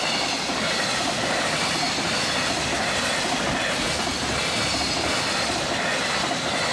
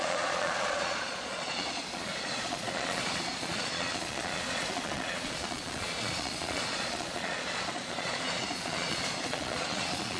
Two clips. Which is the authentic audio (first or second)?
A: first